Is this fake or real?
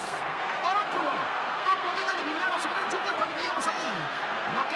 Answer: fake